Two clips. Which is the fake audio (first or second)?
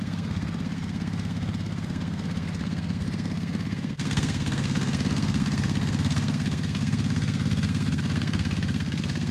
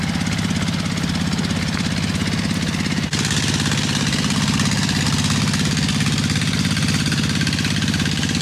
first